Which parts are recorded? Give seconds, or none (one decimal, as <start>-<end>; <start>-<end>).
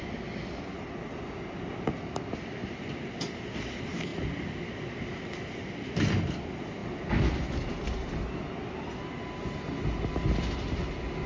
0.0-11.3